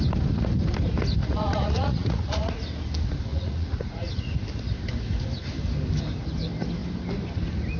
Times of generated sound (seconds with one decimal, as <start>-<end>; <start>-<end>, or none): 1.2-2.5; 3.3-4.3